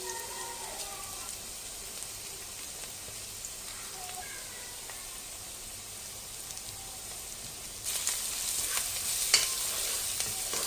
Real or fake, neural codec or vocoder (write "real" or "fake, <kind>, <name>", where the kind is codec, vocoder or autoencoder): real